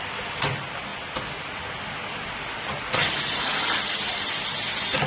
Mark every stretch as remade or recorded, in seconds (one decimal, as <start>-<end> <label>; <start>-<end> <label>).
0.0-5.1 recorded